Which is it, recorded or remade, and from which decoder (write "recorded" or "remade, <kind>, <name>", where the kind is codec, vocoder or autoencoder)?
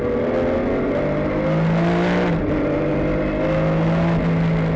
recorded